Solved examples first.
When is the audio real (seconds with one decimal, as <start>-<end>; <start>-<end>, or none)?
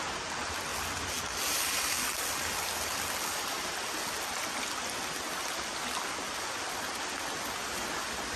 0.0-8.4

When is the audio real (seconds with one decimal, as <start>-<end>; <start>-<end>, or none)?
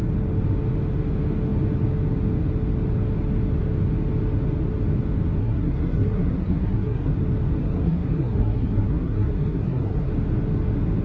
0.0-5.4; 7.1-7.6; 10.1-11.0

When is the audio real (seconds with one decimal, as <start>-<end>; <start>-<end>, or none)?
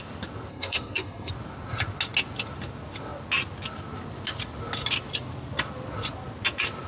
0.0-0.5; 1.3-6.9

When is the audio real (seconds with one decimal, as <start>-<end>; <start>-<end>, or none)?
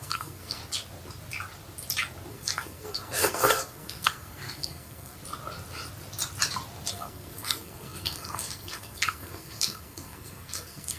0.6-2.3; 5.2-6.9